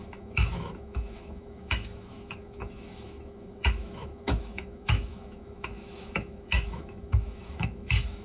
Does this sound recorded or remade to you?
remade